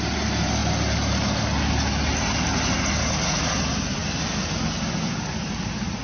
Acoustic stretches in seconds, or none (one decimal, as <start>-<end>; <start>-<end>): 0.6-3.5; 4.0-5.2

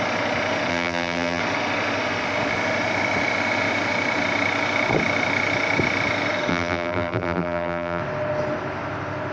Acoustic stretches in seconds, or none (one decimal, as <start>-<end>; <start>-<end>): 0.0-0.7; 1.4-6.5; 8.0-9.3

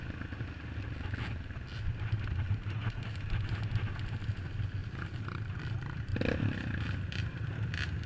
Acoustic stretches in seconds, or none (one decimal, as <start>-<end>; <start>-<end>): 0.0-4.8; 5.5-6.1; 6.8-8.1

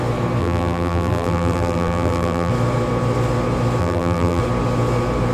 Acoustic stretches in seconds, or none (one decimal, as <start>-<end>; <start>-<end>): 0.0-0.4; 2.5-3.8; 4.4-5.3

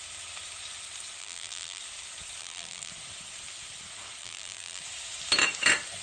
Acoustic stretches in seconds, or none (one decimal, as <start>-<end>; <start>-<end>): 0.0-1.2; 1.8-2.4; 2.9-4.2; 4.8-6.0

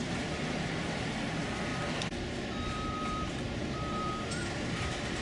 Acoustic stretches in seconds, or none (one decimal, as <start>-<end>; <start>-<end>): 1.7-2.7